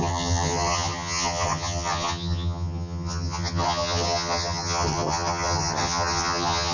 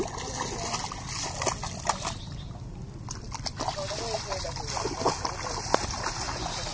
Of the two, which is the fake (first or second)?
first